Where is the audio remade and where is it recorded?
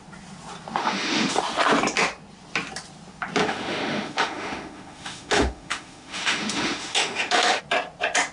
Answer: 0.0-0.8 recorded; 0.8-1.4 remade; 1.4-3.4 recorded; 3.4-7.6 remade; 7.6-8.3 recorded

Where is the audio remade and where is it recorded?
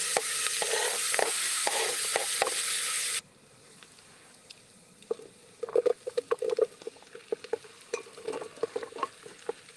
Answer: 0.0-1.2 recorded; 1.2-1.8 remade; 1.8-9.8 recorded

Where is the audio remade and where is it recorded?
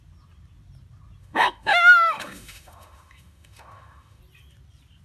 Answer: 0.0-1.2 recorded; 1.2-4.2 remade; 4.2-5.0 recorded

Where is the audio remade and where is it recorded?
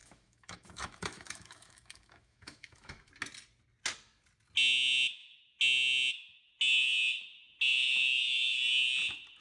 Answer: 0.0-3.1 remade; 3.1-9.4 recorded